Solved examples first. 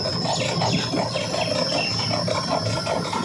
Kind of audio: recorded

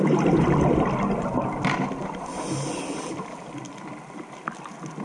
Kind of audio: recorded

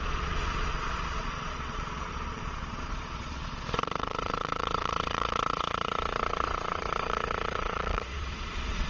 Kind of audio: remade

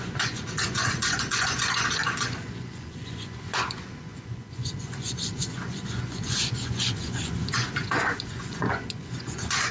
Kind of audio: remade